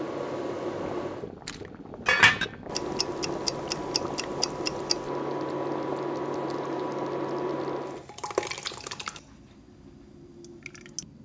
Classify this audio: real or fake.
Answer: real